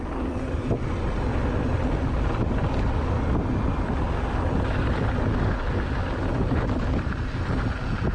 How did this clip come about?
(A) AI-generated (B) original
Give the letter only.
B